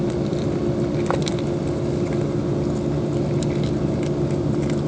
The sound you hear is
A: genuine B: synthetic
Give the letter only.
A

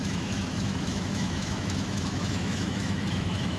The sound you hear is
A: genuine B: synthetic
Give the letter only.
B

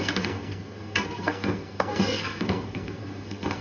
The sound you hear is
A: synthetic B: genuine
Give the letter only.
A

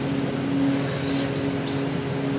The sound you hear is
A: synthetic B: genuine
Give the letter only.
B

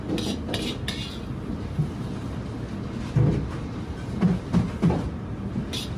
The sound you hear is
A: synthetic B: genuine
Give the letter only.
B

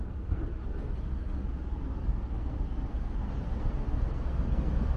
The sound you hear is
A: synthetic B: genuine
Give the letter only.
A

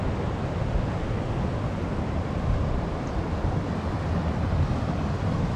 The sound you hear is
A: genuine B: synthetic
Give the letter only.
A